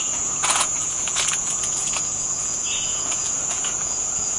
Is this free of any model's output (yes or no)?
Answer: no